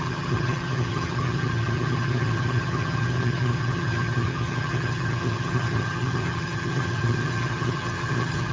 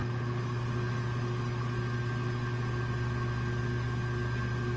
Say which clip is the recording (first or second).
second